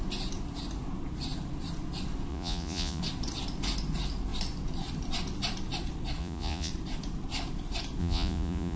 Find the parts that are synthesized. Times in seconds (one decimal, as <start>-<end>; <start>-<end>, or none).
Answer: 2.3-3.0; 6.2-6.7; 8.0-8.8